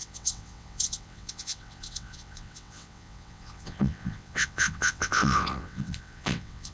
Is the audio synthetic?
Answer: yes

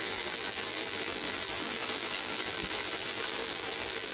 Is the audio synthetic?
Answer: yes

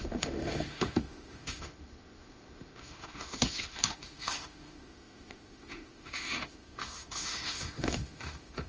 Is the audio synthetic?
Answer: yes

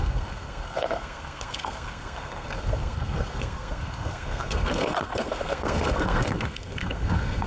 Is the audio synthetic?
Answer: yes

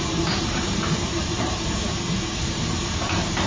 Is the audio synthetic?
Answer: yes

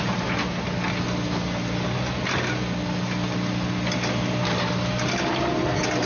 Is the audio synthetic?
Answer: no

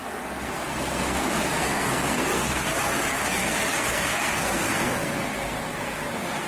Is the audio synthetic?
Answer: yes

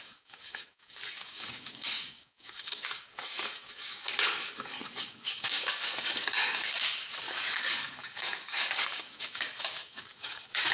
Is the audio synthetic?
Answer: yes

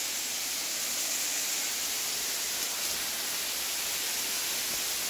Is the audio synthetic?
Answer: no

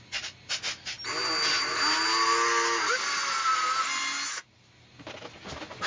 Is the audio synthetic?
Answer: no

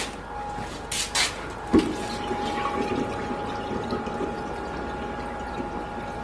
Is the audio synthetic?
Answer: no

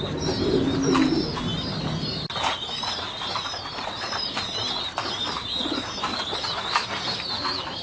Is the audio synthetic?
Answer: no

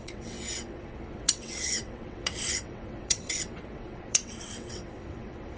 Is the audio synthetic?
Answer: yes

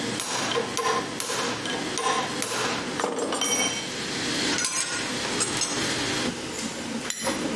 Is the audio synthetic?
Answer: no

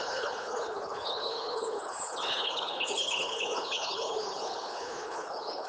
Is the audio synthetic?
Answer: yes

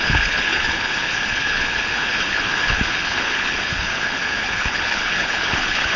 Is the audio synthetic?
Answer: yes